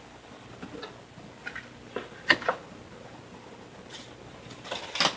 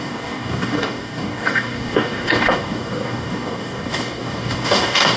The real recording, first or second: first